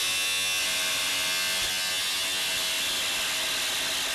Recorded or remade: recorded